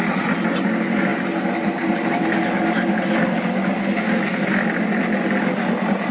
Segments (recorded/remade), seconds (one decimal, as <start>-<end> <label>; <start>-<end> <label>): 0.0-6.1 recorded